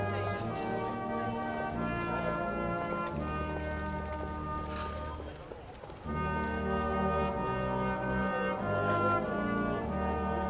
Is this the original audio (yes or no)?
yes